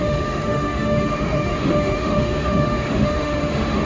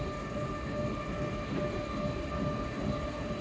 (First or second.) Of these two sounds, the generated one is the first